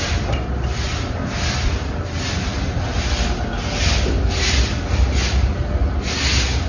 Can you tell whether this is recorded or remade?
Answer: recorded